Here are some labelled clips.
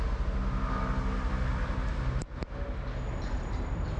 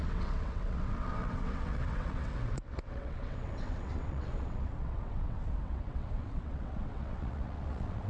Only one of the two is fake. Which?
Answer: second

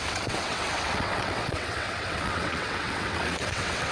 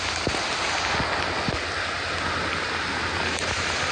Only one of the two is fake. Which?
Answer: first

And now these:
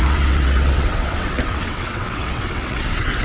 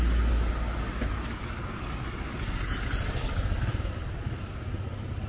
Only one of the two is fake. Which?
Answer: first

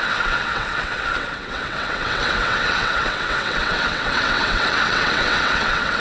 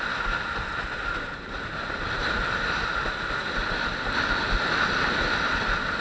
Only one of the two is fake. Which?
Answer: first